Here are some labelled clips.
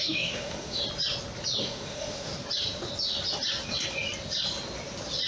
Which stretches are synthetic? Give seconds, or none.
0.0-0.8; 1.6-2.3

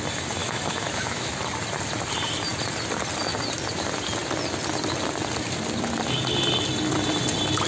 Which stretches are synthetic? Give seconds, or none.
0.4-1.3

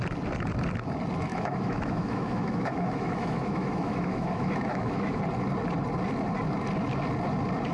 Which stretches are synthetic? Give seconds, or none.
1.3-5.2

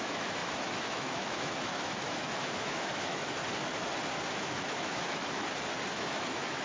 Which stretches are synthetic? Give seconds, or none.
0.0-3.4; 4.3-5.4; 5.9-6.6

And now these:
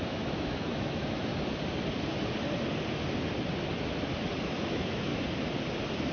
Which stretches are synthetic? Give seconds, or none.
0.0-1.3; 4.4-5.1